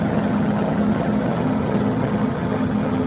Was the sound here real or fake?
fake